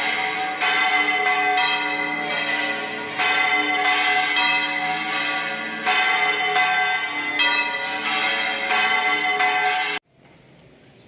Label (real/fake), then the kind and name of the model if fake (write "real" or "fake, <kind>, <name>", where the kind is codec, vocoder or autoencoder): real